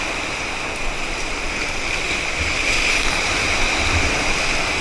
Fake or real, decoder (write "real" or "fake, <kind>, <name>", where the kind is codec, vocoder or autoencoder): real